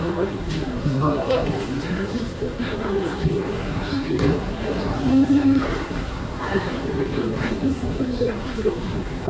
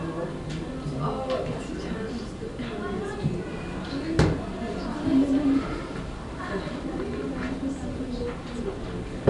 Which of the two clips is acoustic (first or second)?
second